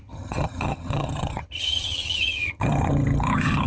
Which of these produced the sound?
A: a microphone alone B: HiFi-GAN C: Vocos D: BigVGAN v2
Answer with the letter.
B